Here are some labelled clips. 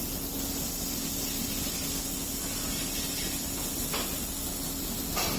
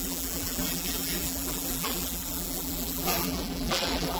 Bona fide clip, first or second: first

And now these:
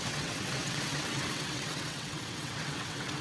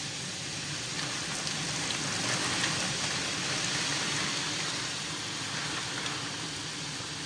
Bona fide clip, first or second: second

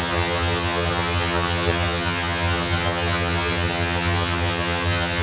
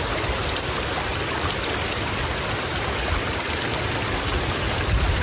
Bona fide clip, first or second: second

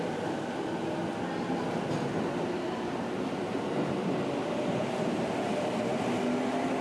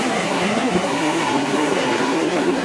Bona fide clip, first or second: first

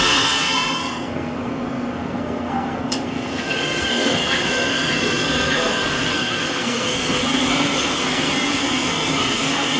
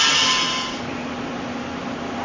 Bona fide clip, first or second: second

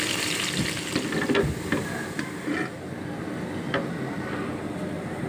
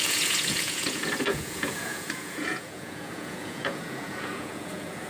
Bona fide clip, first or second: first